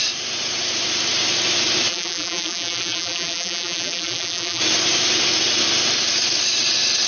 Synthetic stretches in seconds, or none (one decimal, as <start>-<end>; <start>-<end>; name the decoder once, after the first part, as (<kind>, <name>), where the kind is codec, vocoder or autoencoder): 1.9-4.6 (vocoder, BigVGAN v2)